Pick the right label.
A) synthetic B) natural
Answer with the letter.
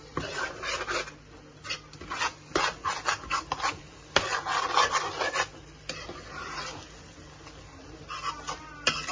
B